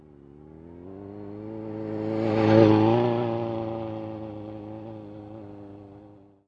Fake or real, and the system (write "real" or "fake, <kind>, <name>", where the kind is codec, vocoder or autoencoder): real